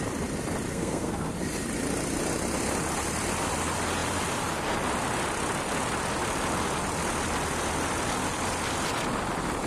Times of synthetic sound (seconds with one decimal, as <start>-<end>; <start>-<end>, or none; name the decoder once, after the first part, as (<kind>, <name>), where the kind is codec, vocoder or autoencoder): 0.7-1.3 (codec, SNAC)